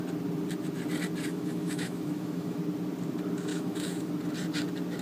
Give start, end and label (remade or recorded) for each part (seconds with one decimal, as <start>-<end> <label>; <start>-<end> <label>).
0.0-1.3 recorded; 1.3-2.6 remade; 2.6-3.5 recorded; 3.5-4.1 remade; 4.1-5.0 recorded